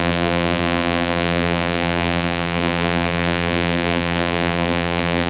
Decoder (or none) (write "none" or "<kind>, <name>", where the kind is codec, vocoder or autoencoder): vocoder, BigVGAN v2